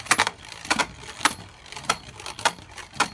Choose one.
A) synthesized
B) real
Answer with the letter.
B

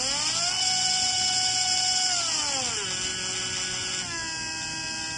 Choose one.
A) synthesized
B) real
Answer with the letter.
B